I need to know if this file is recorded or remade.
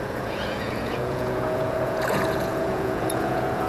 remade